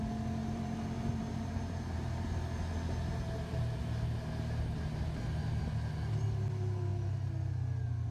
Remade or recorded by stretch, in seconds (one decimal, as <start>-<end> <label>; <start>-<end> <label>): 0.0-0.4 recorded; 0.4-2.3 remade; 2.3-8.1 recorded